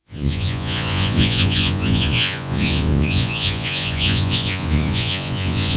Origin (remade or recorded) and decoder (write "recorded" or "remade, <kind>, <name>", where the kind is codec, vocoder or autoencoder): remade, vocoder, Vocos